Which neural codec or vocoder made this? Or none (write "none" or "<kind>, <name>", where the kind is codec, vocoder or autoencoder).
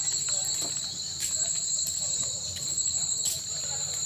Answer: vocoder, BigVGAN v2